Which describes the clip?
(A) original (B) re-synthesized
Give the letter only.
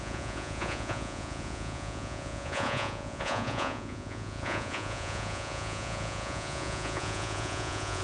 B